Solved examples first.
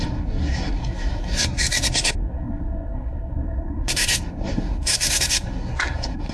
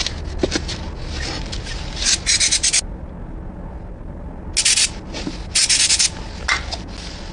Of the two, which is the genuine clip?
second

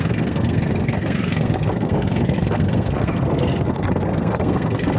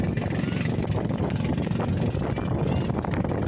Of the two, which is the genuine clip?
second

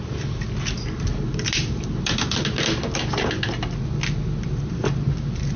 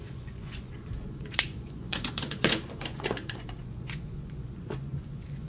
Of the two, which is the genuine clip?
first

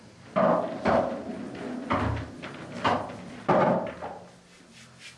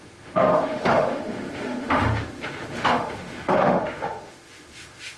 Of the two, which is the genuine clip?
first